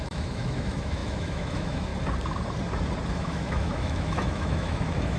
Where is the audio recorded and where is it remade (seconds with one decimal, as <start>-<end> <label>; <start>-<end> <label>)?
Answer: 0.0-1.9 remade; 1.9-3.1 recorded; 3.1-5.2 remade